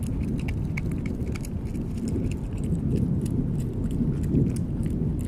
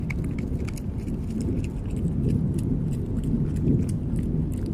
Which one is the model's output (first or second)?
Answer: first